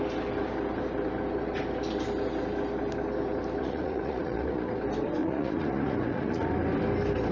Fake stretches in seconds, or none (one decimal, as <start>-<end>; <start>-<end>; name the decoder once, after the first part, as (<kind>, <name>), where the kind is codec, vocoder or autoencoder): 3.6-4.7 (vocoder, Vocos); 5.2-6.5